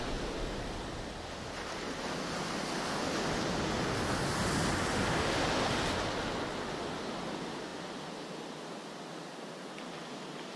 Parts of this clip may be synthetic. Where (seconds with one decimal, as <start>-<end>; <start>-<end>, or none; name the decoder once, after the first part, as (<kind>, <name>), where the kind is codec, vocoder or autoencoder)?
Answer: none